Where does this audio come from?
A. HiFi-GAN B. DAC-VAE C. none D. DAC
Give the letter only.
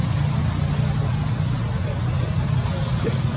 C